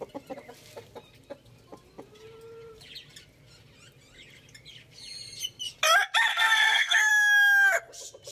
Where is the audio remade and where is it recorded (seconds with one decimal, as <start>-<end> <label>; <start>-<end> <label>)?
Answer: 0.0-6.3 recorded; 6.3-7.1 remade; 7.1-8.3 recorded